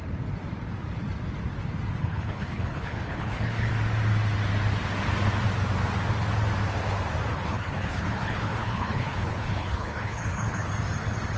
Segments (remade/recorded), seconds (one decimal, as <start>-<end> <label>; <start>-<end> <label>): 0.0-2.0 recorded; 2.0-3.7 remade; 3.7-7.3 recorded; 7.3-10.7 remade; 10.7-11.4 recorded